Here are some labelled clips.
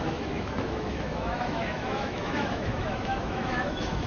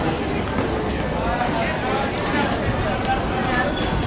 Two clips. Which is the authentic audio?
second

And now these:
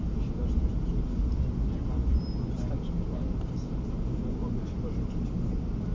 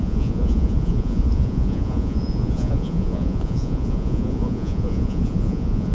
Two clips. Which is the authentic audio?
first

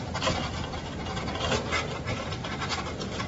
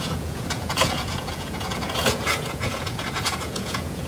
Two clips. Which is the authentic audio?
first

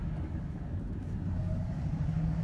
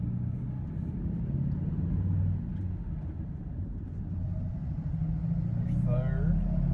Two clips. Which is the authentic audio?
second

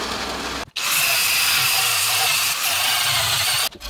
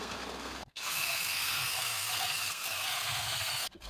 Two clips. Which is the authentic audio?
first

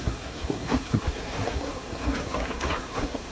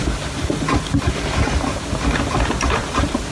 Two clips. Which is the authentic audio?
second